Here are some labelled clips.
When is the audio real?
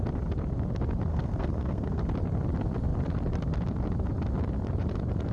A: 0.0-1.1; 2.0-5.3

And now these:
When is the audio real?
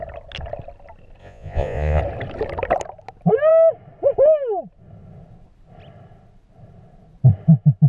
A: 0.0-1.2; 2.0-7.9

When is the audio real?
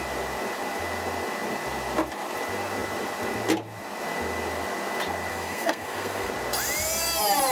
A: 0.0-5.3; 6.3-7.5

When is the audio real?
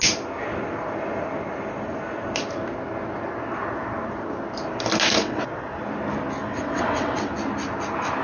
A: 0.0-5.2; 5.8-6.4; 7.3-8.2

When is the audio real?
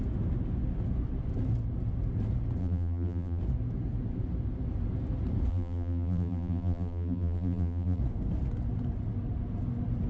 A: 0.0-2.6; 3.4-5.5; 8.0-10.1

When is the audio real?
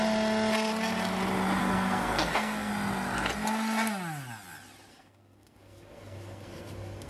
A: 0.0-1.6; 2.7-4.9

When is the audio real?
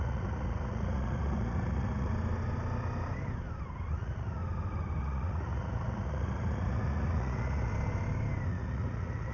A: 2.1-3.9; 4.4-5.0; 7.7-8.5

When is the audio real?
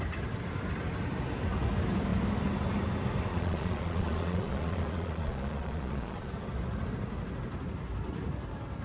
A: 0.0-3.3; 6.3-8.8